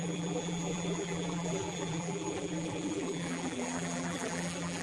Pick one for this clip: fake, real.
fake